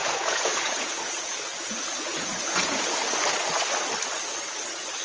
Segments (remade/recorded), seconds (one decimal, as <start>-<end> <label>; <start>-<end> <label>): 0.0-3.0 remade; 3.0-5.0 recorded